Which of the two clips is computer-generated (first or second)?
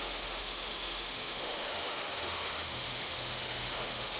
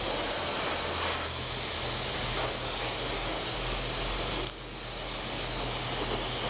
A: first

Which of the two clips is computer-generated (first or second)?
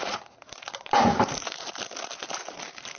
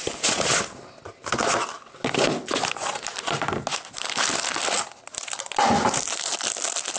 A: first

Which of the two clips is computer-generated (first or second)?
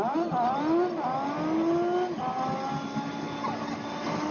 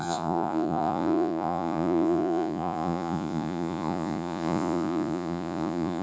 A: second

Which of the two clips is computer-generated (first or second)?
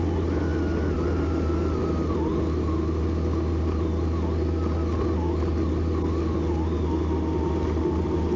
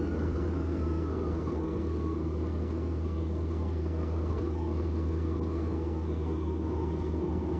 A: second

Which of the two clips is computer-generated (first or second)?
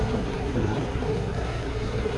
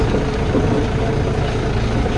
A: first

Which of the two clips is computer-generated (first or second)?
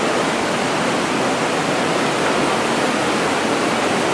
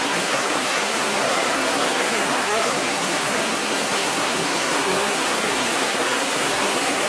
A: second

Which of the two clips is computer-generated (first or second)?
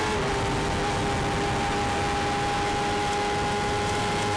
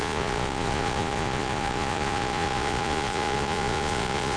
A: second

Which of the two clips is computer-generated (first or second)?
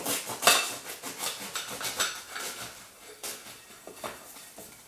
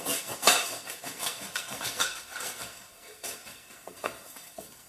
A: second